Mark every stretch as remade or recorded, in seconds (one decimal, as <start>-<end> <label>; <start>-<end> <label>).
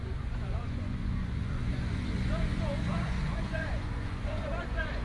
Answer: 0.0-5.0 remade